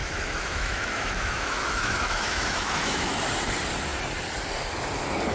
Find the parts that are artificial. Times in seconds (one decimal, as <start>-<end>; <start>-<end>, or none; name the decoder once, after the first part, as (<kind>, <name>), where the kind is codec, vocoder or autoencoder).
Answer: 0.0-3.2 (autoencoder, DAC-VAE)